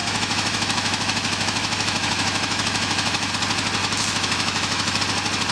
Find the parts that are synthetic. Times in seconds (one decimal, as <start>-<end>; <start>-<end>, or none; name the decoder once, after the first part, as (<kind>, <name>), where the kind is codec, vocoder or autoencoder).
0.0-3.3 (autoencoder, DAC-VAE); 3.8-5.0